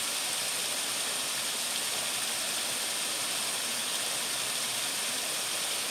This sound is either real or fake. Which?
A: real